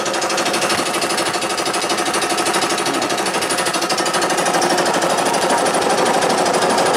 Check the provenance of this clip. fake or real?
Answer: real